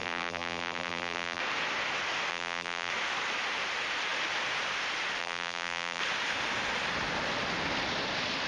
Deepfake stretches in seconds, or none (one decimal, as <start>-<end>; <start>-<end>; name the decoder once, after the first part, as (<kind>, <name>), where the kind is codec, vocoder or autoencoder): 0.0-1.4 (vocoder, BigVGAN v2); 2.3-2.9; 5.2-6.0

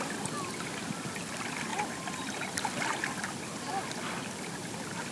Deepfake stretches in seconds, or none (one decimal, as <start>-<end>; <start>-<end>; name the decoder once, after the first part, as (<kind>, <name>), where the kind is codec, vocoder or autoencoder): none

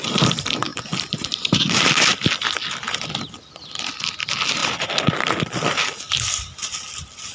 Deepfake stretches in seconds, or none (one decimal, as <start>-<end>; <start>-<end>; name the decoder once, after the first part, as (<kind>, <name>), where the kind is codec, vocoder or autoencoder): 0.0-2.1 (vocoder, BigVGAN v2); 2.8-7.3

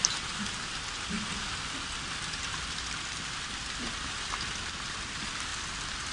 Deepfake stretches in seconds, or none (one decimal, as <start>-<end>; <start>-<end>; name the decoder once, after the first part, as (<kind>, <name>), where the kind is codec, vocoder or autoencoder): none

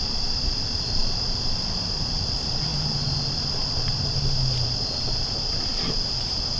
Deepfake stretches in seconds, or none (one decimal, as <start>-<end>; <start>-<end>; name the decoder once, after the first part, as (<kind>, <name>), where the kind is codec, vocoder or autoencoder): 0.0-6.6 (vocoder, BigVGAN v2)

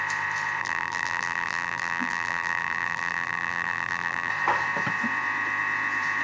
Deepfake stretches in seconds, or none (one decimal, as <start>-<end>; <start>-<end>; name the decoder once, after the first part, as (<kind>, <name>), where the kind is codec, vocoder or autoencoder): 0.6-4.3 (vocoder, BigVGAN v2)